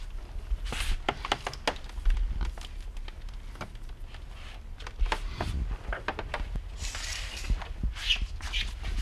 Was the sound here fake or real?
real